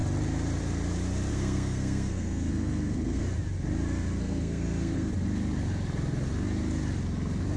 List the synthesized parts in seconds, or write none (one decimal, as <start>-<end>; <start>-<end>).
1.3-3.2; 4.2-5.1